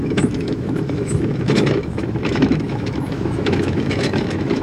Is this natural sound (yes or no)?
no